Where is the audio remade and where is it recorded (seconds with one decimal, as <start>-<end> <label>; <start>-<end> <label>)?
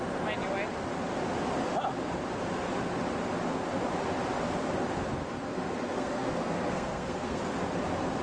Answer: 0.0-5.3 recorded; 5.3-7.4 remade; 7.4-8.2 recorded